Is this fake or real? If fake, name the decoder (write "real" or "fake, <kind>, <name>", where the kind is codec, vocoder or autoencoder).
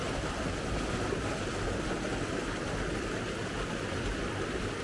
real